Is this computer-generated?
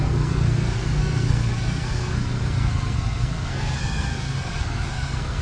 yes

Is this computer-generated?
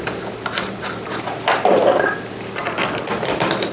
no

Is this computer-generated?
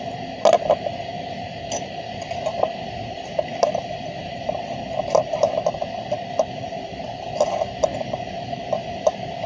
no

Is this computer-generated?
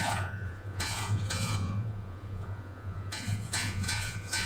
yes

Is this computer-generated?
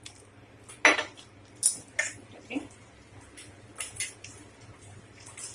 no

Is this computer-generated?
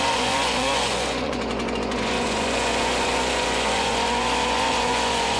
yes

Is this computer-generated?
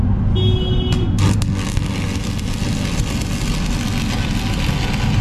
no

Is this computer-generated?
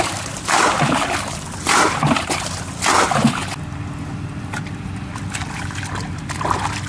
no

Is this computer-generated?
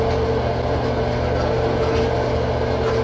no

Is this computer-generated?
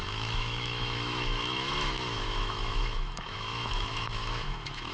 yes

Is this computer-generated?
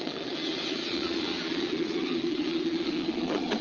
yes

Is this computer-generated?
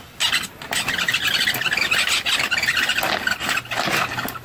no